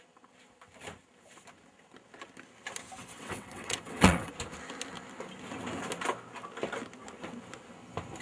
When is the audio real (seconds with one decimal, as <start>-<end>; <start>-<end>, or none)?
0.0-3.0; 4.3-8.2